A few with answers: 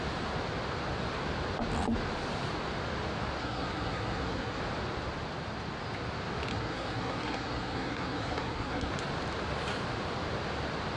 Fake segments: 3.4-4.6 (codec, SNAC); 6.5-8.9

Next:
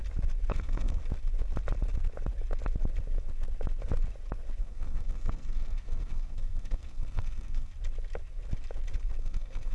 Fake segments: 0.5-1.0 (codec, SNAC); 4.6-7.7; 9.2-9.7

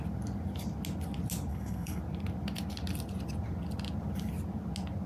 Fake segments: 1.5-2.0 (codec, SNAC)

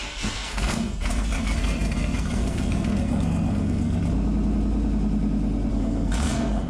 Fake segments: 0.0-4.0 (codec, SNAC); 5.7-6.7

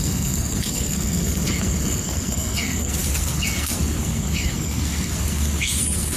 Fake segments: 0.0-6.2 (codec, SNAC)

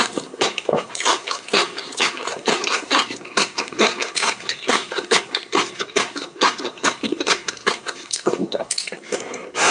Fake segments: 0.0-9.7 (codec, SNAC)